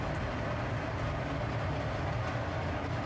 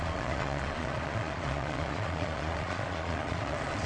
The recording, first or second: first